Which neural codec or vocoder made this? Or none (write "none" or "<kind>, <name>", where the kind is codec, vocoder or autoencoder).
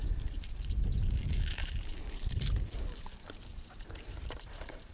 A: vocoder, BigVGAN v2